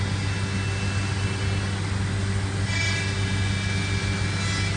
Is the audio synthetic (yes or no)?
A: no